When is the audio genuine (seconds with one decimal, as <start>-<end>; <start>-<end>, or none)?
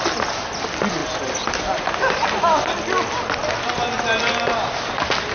0.0-5.3